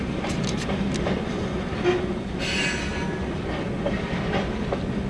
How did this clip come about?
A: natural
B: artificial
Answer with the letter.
A